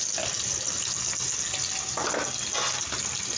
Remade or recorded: recorded